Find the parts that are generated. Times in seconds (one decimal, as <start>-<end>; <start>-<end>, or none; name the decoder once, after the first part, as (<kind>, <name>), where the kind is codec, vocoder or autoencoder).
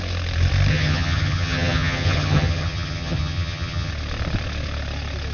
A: 0.7-3.9 (vocoder, HiFi-GAN)